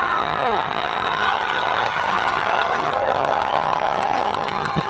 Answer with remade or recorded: remade